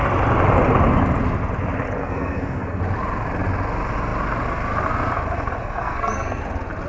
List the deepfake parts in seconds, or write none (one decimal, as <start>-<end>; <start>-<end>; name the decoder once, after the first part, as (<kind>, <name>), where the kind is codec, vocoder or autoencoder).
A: 2.0-2.8 (codec, SNAC); 5.6-6.4